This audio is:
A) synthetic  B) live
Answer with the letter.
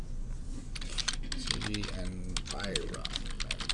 B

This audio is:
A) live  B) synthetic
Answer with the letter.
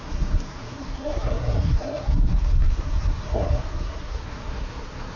B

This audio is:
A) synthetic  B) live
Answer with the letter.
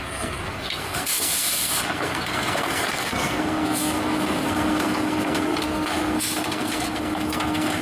A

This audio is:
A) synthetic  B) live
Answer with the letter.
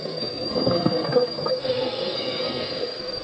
A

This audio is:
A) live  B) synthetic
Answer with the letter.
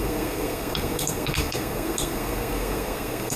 B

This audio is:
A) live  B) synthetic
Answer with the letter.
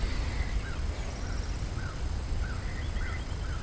A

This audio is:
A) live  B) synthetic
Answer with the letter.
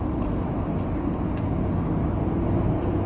A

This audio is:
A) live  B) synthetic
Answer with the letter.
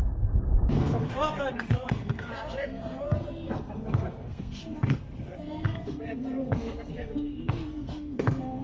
B